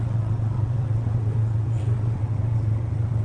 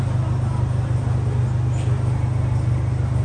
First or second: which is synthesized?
first